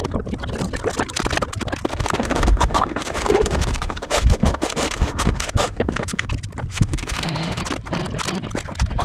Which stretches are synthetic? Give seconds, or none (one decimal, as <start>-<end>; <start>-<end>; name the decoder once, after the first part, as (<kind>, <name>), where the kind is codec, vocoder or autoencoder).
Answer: 1.9-6.3 (autoencoder, DAC-VAE); 6.7-7.6